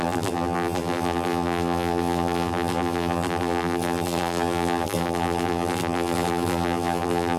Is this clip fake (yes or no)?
yes